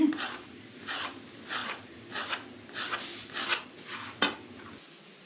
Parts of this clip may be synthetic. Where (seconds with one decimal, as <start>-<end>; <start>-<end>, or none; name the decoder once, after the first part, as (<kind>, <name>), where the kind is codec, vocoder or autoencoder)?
none